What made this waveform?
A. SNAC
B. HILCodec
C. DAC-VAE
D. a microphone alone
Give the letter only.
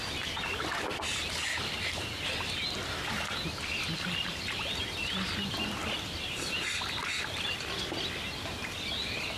D